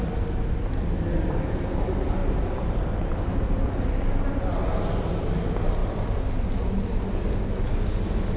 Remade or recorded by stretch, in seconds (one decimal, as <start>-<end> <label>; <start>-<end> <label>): 0.0-2.2 recorded; 2.2-3.1 remade; 3.1-8.4 recorded